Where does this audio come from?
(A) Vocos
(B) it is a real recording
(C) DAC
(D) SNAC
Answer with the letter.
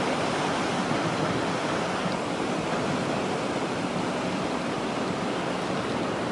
B